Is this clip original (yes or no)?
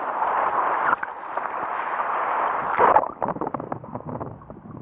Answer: yes